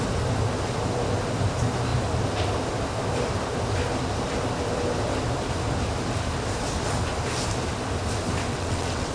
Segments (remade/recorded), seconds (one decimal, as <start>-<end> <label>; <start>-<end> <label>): 0.0-8.5 recorded; 8.5-9.1 remade